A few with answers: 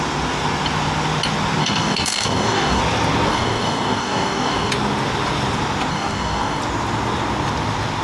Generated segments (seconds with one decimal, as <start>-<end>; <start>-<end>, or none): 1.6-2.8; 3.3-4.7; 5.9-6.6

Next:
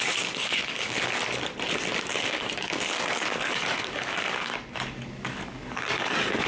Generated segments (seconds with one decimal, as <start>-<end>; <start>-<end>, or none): 0.0-1.2; 2.0-6.5

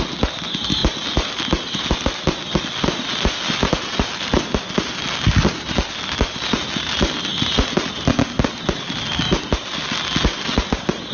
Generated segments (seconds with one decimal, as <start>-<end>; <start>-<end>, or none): none